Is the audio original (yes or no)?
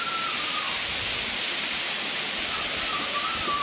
yes